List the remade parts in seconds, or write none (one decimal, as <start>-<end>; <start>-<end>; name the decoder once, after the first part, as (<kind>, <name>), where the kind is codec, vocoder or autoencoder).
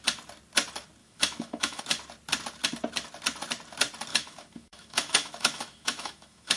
1.0-1.8 (autoencoder, DAC-VAE); 4.1-6.6